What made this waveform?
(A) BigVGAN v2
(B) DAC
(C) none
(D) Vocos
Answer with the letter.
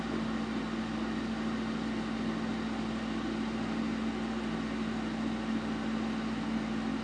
C